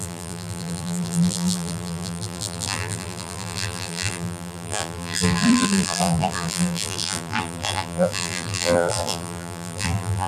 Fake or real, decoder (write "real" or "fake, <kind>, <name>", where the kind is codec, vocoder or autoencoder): fake, vocoder, BigVGAN v2